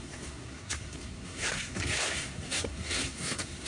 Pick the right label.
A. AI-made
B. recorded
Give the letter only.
A